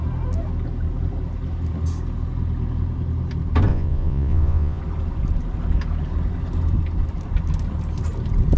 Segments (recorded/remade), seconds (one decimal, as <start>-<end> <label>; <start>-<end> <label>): 0.0-3.7 recorded; 3.7-4.8 remade; 4.8-8.6 recorded